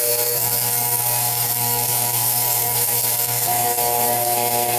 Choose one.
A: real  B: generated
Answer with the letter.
B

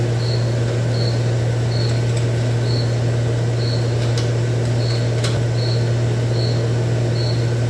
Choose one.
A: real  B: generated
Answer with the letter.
A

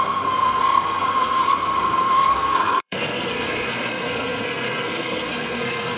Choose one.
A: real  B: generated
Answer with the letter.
B